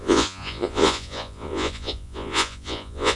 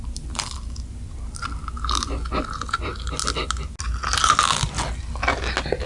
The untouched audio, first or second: second